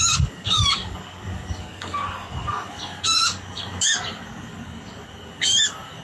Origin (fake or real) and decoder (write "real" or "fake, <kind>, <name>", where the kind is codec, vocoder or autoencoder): fake, codec, DAC